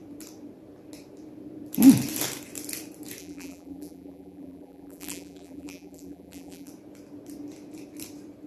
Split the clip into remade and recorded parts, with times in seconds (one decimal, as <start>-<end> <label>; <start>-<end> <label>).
0.0-3.2 recorded; 3.2-6.7 remade; 6.7-8.5 recorded